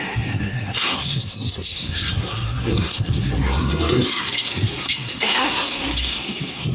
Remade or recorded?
remade